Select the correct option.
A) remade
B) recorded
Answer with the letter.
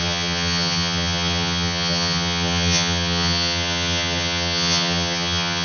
A